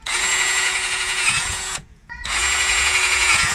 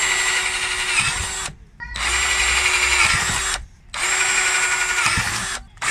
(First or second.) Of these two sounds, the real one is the second